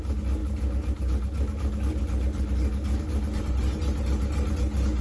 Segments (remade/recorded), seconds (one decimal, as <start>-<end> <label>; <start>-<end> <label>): 0.0-5.0 recorded